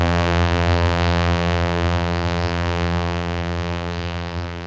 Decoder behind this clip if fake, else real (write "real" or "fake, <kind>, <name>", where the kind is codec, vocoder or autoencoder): fake, vocoder, BigVGAN v2